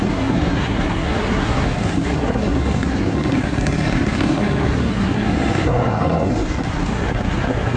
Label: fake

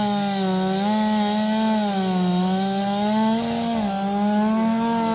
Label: real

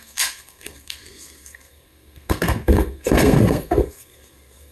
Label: fake